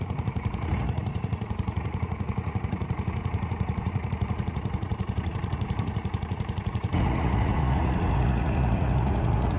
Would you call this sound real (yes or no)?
no